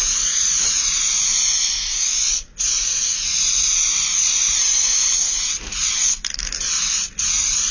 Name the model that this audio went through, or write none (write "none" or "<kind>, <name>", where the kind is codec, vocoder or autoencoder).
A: none